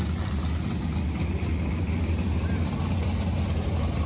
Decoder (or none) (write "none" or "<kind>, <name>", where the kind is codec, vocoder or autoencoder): none